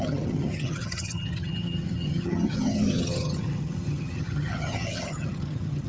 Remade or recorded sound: remade